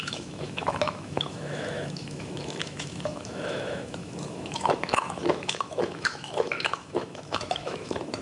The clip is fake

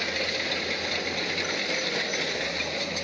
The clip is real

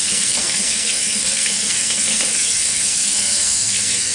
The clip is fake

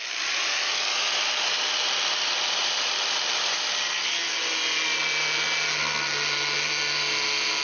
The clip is real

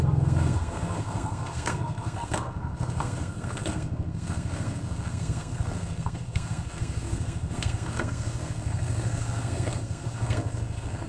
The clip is fake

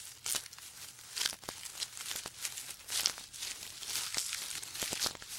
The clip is real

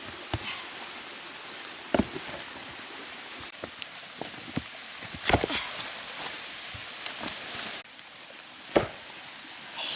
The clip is real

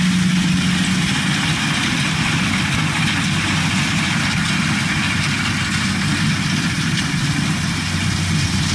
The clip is real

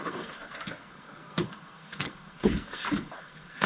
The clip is fake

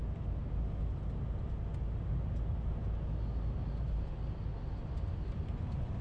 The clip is real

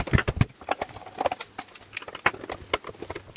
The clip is real